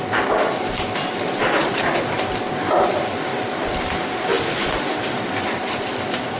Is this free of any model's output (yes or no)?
yes